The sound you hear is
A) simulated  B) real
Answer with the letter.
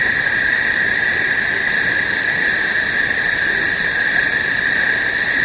B